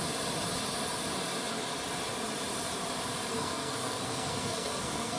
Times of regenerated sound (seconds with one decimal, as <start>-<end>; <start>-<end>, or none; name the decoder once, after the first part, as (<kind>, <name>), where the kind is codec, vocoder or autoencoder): 3.3-5.2 (codec, SNAC)